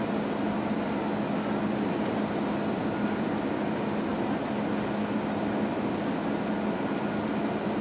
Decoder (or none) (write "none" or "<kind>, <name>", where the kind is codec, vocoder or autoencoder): none